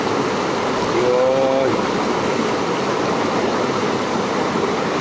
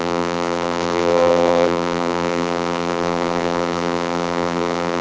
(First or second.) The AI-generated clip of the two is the second